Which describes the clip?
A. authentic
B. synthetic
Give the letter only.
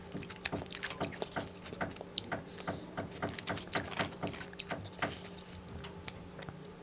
A